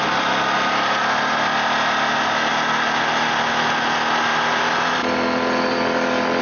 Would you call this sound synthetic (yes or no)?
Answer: no